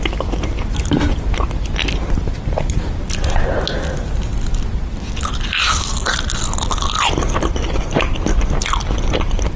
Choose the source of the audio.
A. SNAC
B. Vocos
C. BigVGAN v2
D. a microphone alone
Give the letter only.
D